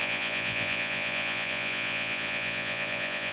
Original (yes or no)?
no